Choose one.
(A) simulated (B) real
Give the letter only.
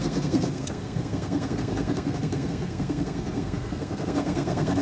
A